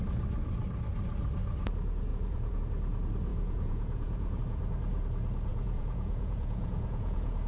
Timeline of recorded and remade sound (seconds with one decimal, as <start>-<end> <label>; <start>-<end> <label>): 0.0-2.1 recorded; 2.1-2.6 remade; 2.6-3.3 recorded; 3.3-4.4 remade; 4.4-5.5 recorded; 5.5-7.5 remade